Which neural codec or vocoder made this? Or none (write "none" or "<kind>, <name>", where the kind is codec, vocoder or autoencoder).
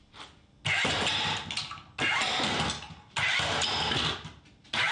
none